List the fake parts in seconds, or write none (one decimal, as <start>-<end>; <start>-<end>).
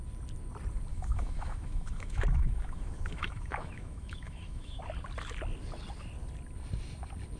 0.9-4.8